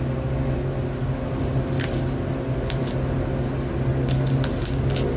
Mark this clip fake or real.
real